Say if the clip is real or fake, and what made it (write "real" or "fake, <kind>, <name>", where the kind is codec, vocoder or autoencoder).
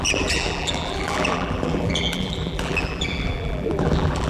fake, vocoder, BigVGAN v2